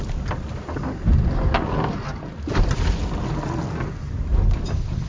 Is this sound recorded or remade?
recorded